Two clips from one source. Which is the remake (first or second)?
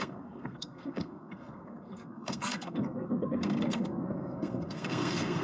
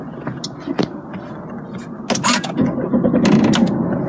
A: first